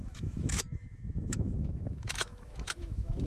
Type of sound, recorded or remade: remade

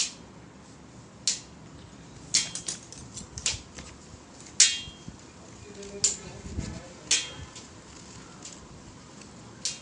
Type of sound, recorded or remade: recorded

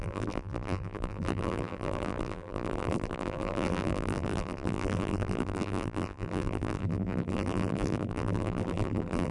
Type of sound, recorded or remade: remade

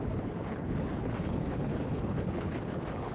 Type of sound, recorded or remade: remade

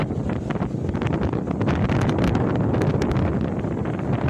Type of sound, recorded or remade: recorded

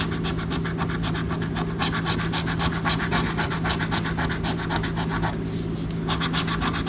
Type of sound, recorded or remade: recorded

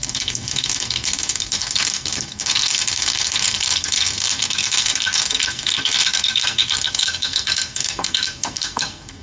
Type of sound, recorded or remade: remade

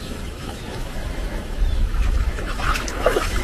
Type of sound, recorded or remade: remade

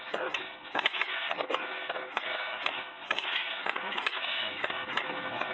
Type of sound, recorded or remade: remade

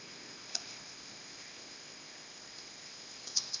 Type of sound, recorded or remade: remade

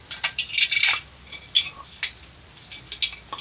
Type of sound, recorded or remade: recorded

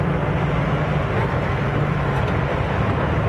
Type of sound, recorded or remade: recorded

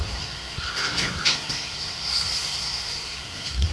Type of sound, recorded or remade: remade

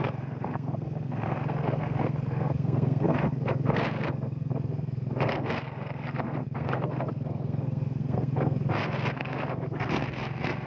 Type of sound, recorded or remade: remade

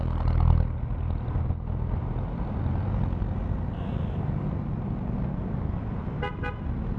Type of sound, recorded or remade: recorded